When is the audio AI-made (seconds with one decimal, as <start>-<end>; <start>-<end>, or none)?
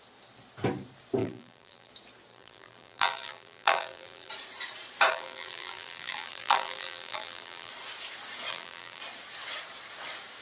1.2-1.9; 2.3-4.3; 5.1-7.7; 8.5-9.0